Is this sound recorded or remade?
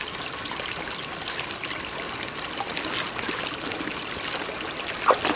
recorded